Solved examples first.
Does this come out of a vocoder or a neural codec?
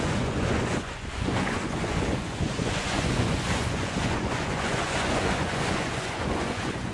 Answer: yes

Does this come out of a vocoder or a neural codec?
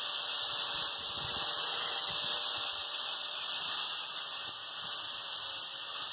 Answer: no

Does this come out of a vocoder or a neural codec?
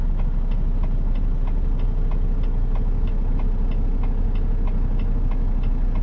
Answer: no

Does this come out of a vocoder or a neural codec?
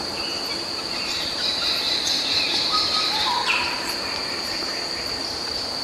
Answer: yes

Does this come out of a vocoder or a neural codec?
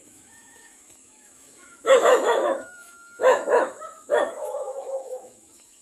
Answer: yes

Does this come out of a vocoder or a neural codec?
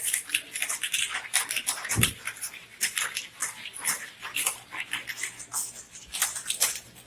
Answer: yes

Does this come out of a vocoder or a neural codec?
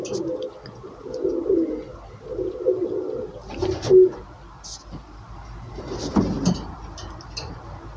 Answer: no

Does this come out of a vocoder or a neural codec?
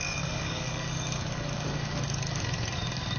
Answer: yes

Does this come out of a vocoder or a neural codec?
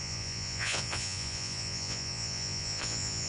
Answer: yes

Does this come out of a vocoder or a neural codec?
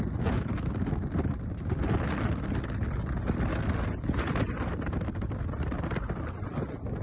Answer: no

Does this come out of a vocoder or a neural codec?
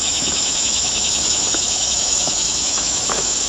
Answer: yes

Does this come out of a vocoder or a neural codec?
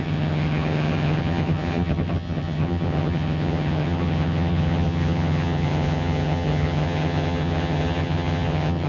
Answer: yes